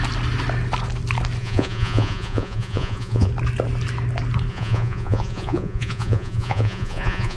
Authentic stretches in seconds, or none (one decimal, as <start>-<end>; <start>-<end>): 0.0-1.4; 3.3-4.5